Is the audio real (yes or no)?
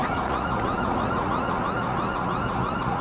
no